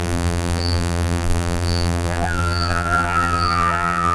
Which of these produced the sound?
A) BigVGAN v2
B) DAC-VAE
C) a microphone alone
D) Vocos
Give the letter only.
A